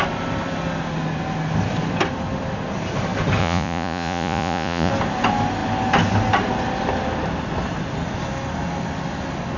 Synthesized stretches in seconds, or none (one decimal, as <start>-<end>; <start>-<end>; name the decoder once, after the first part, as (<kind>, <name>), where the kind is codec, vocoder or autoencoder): 3.4-4.9 (vocoder, Vocos)

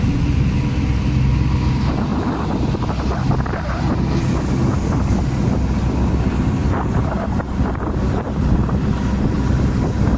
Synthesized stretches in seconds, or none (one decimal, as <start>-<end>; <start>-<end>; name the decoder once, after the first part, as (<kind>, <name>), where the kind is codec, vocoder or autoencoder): 2.1-3.8 (vocoder, BigVGAN v2); 6.6-8.5

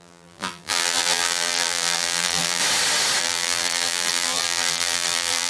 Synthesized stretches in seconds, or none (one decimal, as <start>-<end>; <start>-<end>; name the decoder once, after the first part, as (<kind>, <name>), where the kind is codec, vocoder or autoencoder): 0.0-2.6 (vocoder, BigVGAN v2); 3.2-5.5